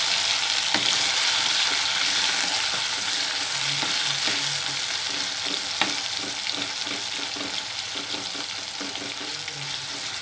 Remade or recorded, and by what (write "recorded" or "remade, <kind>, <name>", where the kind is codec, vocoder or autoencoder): recorded